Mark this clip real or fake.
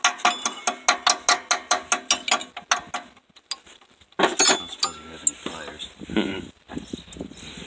real